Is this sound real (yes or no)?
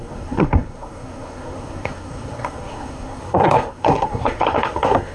no